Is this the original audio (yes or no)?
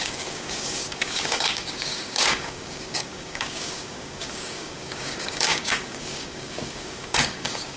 no